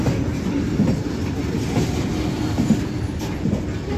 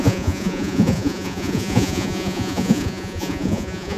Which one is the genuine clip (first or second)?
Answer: first